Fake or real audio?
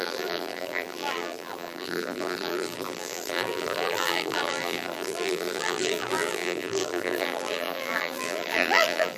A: fake